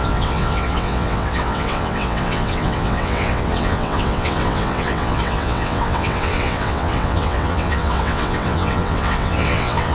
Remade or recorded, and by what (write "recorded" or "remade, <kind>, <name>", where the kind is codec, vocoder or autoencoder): remade, vocoder, WaveNeXt